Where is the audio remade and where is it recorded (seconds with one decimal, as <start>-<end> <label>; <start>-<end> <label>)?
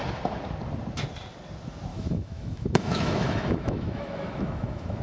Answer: 0.0-1.9 recorded; 1.9-5.0 remade